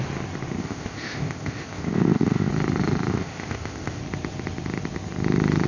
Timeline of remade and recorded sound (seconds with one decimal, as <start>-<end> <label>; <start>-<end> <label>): 0.0-0.6 recorded; 0.6-2.5 remade; 2.5-3.1 recorded; 3.1-4.0 remade; 4.0-5.7 recorded